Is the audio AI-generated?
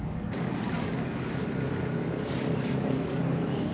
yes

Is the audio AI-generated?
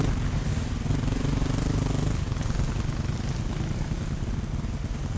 no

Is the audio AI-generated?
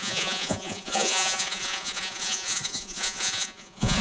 yes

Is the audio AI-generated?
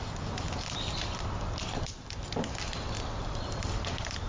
no